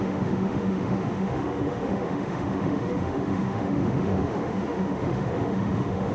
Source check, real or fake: fake